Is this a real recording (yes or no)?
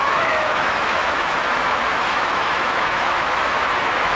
no